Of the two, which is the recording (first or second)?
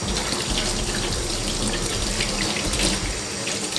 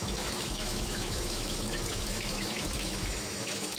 first